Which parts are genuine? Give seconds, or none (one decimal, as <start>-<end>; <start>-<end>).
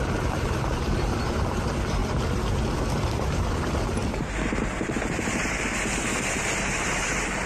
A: 2.0-2.9; 4.0-5.2; 5.7-6.3